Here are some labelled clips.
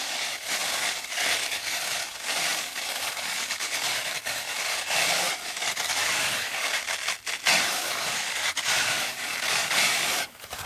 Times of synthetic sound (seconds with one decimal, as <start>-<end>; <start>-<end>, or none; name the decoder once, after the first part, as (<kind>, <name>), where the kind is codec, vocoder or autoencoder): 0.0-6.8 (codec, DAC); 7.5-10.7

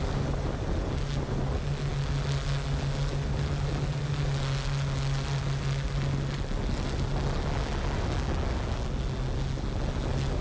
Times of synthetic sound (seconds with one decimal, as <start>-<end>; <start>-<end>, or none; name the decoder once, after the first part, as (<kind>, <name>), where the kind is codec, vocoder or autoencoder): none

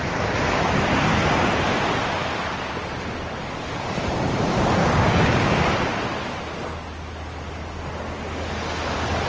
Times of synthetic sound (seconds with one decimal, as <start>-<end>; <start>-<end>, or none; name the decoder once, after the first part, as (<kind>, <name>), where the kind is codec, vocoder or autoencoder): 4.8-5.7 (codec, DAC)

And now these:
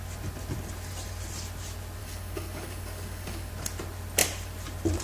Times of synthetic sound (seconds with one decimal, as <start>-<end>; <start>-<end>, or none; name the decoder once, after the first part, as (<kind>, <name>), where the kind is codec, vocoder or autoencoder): 2.0-3.5 (codec, DAC)